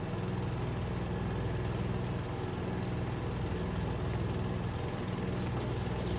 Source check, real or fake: real